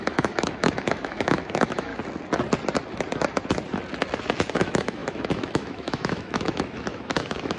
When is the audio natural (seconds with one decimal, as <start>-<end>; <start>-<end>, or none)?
1.9-4.5